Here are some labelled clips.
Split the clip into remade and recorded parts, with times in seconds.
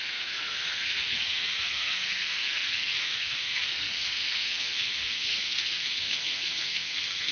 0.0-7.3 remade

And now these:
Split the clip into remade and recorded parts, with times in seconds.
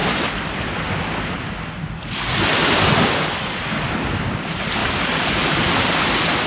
0.0-3.9 remade; 3.9-4.8 recorded; 4.8-5.8 remade; 5.8-6.5 recorded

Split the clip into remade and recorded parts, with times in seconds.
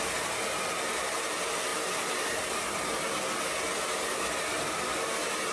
0.0-5.5 recorded